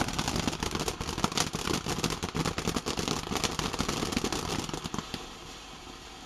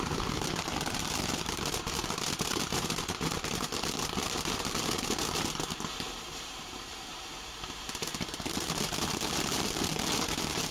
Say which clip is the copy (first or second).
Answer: second